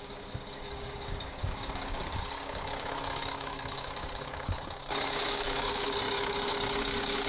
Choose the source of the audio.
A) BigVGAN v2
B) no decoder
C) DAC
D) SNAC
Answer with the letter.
C